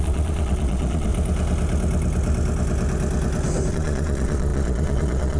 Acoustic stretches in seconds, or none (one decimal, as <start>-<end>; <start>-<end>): 1.1-3.7